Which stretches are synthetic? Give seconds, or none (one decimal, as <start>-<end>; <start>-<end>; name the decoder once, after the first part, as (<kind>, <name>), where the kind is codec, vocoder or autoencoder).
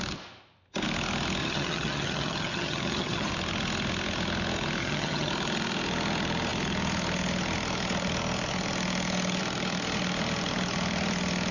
1.4-3.3 (vocoder, HiFi-GAN); 4.8-5.3